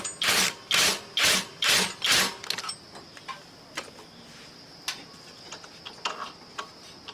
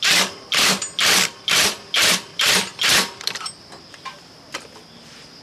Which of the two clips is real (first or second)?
first